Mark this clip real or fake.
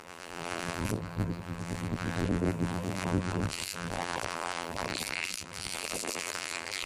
fake